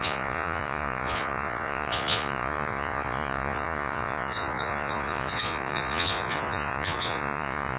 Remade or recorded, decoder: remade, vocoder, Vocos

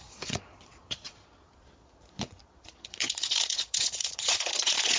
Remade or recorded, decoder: remade, vocoder, Vocos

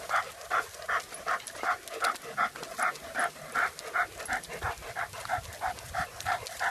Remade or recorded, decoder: recorded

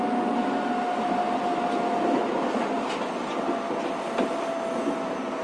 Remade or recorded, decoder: recorded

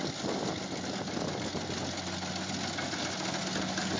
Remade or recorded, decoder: recorded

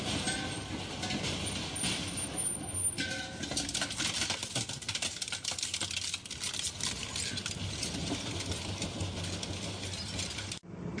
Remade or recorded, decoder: recorded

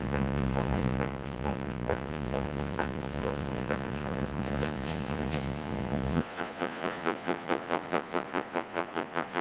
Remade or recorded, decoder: remade, vocoder, Vocos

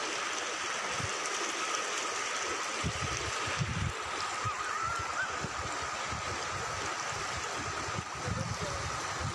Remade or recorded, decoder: recorded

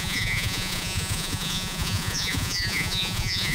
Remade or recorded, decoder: remade, vocoder, Vocos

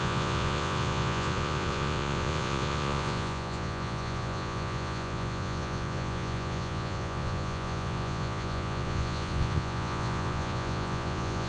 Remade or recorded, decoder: remade, vocoder, Vocos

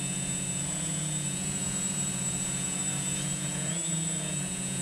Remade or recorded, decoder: remade, vocoder, Vocos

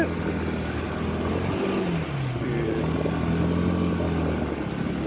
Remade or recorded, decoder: recorded